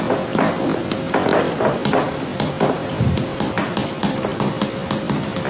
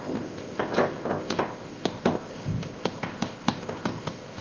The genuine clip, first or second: first